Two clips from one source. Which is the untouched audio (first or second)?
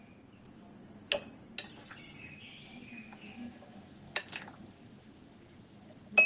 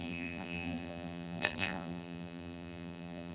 first